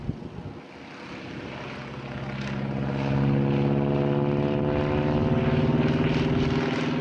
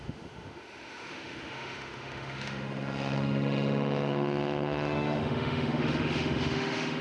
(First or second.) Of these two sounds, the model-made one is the second